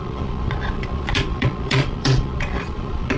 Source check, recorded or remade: remade